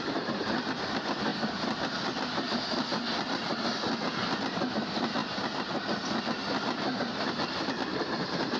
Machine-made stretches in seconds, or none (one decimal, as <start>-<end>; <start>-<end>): 0.0-2.9; 4.4-5.2; 6.2-8.6